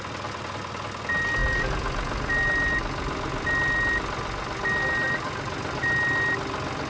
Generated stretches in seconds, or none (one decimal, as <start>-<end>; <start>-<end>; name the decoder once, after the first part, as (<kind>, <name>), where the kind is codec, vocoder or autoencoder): none